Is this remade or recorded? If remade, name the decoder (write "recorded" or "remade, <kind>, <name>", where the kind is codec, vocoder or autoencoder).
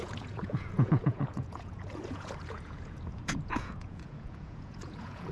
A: remade, vocoder, Vocos